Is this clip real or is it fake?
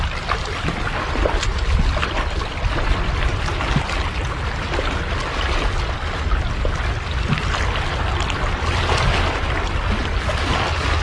real